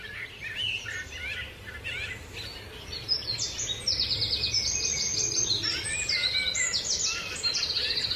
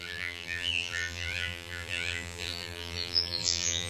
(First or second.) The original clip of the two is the first